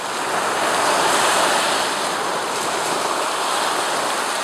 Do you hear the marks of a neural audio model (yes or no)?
no